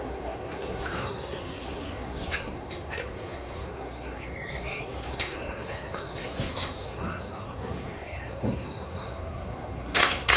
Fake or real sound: fake